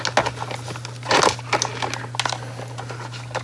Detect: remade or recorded recorded